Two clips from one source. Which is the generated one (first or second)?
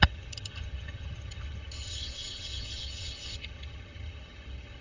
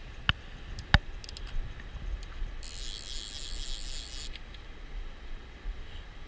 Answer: first